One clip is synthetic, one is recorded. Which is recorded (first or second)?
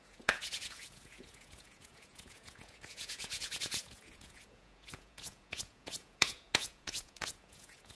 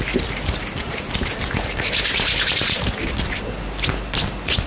second